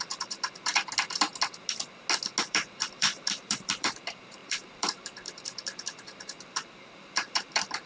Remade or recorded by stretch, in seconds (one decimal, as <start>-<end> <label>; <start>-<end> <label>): 0.0-0.7 remade; 0.7-2.4 recorded; 2.4-7.9 remade